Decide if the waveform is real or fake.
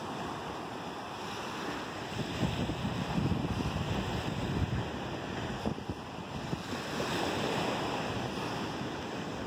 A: real